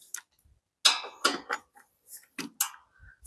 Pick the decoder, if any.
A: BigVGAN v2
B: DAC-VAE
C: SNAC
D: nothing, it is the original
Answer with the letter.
D